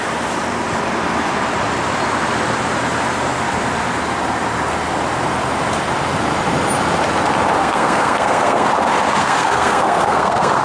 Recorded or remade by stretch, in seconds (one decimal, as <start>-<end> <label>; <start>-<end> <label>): 0.0-7.6 recorded; 7.6-8.7 remade; 8.7-9.2 recorded; 9.2-10.6 remade